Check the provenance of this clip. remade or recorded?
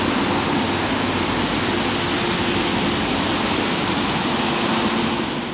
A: recorded